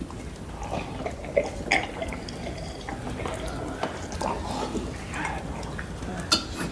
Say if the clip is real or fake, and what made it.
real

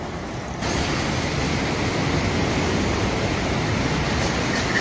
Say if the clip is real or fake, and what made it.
real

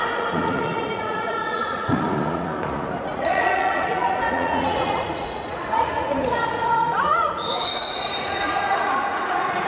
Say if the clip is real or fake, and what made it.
fake, vocoder, Vocos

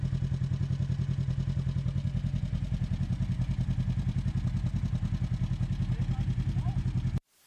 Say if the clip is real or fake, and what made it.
real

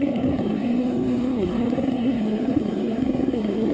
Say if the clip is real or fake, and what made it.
fake, codec, SNAC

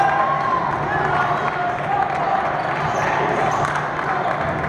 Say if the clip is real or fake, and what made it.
real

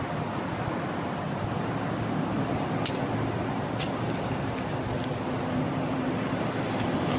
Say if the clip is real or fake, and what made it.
real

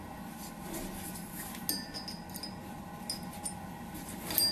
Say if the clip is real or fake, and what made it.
real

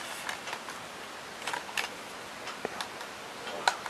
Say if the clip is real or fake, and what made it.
real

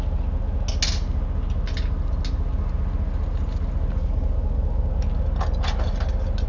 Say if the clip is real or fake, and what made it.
real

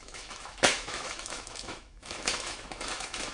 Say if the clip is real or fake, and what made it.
fake, autoencoder, DAC-VAE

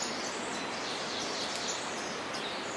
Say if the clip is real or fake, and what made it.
real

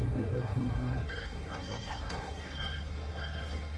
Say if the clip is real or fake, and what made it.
fake, codec, SNAC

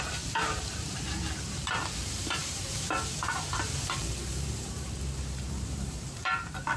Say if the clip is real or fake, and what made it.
fake, vocoder, BigVGAN v2